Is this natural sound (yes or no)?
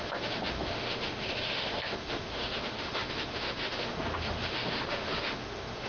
no